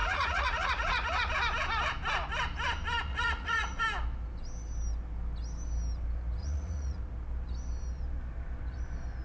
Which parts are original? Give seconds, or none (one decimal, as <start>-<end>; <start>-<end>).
1.3-3.1; 3.8-6.4; 7.0-9.2